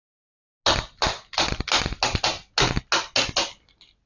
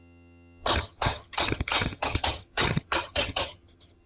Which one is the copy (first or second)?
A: second